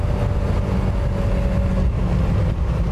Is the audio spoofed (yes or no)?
no